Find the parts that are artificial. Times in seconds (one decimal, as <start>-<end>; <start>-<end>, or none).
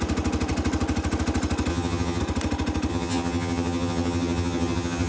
1.7-2.2; 2.9-5.1